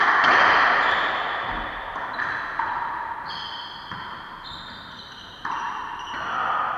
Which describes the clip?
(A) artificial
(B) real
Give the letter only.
B